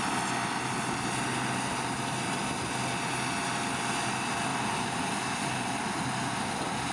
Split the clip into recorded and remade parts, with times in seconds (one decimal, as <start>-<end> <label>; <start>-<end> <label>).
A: 0.0-4.5 recorded; 4.5-5.2 remade; 5.2-6.9 recorded